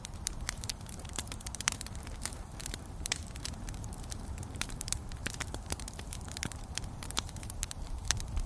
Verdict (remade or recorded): remade